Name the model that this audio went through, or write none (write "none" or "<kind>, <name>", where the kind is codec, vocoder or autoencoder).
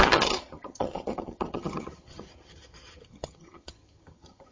vocoder, HiFi-GAN